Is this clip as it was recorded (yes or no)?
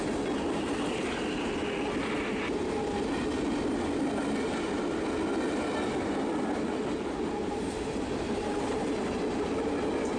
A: yes